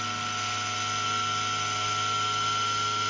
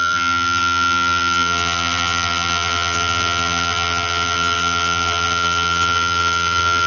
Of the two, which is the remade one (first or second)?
second